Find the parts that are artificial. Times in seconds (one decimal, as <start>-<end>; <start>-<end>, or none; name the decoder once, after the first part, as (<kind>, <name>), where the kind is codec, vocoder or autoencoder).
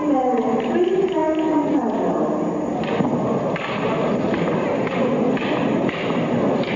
none